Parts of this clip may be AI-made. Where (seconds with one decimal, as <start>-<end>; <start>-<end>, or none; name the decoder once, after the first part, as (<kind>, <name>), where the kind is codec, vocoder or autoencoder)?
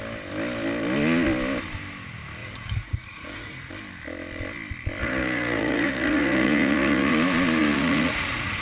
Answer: 2.4-3.7 (vocoder, Vocos); 5.0-7.1; 7.6-8.6